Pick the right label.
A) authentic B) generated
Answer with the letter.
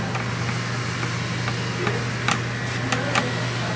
A